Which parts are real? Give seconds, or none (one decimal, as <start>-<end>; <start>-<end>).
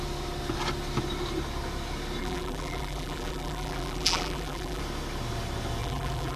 0.0-2.2; 4.8-5.8